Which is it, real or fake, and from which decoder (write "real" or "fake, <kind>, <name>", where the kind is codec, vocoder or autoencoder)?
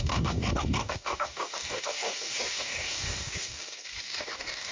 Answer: fake, codec, DAC